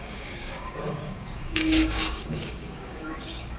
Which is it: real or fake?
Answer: fake